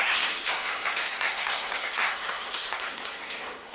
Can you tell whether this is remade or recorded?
remade